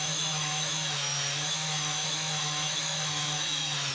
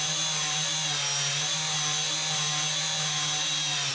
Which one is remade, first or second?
first